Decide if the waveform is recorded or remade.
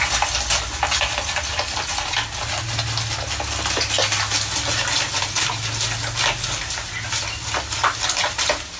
recorded